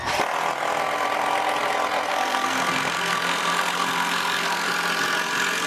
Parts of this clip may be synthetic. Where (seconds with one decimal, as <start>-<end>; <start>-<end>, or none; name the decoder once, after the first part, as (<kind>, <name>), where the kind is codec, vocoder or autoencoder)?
2.1-4.7 (codec, SNAC)